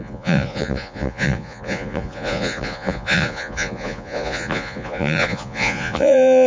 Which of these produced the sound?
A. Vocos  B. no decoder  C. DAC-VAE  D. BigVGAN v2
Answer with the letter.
A